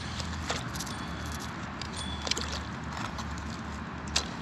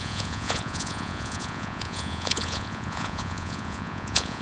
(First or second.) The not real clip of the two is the second